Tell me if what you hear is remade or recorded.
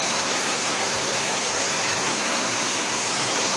remade